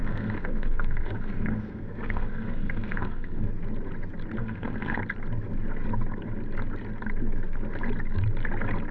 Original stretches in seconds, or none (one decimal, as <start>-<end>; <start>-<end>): 3.5-4.4; 5.0-8.9